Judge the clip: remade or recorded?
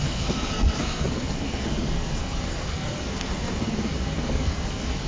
remade